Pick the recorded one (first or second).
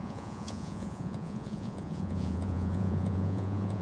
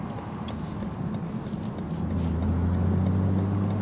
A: second